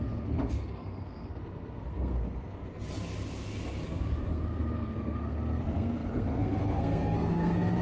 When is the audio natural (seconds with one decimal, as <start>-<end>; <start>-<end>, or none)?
2.6-4.3